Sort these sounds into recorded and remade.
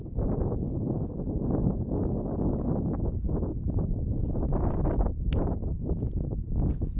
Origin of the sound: recorded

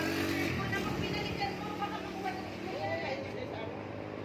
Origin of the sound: recorded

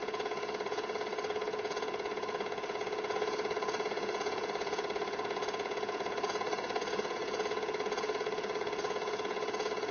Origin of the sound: remade